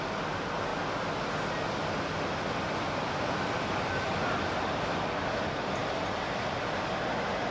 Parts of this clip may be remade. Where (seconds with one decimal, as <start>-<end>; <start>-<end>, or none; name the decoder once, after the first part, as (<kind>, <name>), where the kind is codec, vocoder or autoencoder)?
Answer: 0.0-0.7 (vocoder, BigVGAN v2); 1.7-7.5